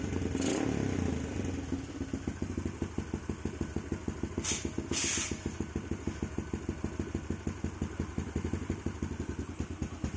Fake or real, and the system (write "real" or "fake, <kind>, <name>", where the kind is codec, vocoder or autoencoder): real